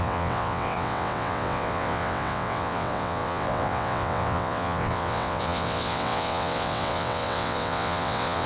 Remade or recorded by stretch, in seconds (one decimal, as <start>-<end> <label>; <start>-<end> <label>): 0.0-8.5 remade